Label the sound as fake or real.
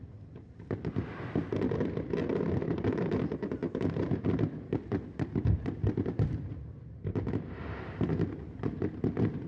fake